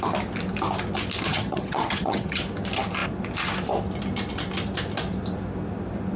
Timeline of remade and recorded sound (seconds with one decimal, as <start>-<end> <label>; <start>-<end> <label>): 0.0-1.3 recorded; 1.3-2.4 remade; 2.4-6.2 recorded